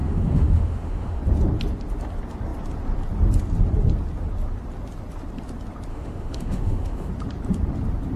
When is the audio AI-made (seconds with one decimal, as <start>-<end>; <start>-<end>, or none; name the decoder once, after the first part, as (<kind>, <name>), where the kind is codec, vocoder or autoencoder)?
0.0-1.2 (autoencoder, DAC-VAE); 5.9-7.1